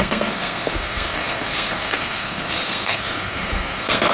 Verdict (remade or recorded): remade